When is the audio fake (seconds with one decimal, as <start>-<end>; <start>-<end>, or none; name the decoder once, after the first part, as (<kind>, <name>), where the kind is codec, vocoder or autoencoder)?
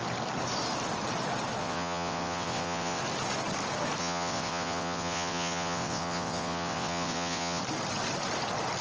1.6-3.0 (vocoder, WaveNeXt); 4.0-7.6